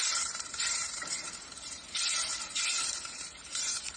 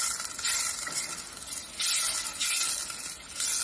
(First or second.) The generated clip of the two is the first